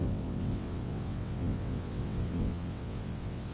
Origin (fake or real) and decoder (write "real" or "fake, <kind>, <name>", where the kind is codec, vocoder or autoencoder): fake, vocoder, WaveNeXt